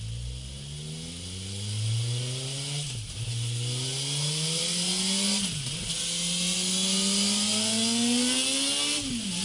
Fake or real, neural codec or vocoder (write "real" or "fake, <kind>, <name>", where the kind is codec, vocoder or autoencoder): real